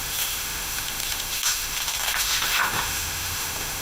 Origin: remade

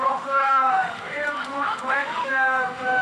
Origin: remade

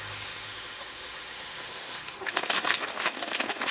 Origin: remade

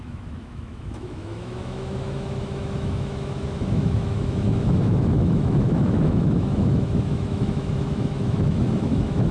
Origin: remade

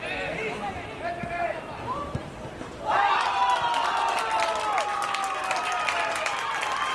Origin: recorded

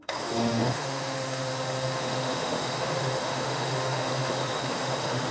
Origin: remade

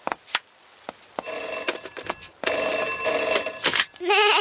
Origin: recorded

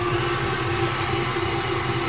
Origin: recorded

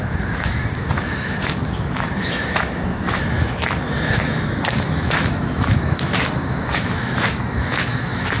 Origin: remade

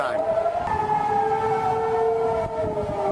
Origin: recorded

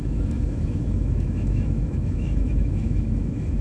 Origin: remade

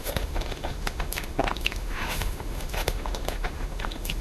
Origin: remade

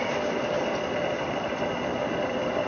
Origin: recorded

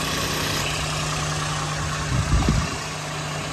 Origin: recorded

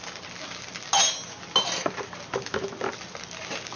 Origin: recorded